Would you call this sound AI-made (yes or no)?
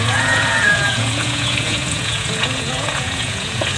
yes